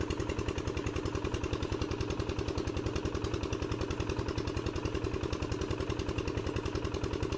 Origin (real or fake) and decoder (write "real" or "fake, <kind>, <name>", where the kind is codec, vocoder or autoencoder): real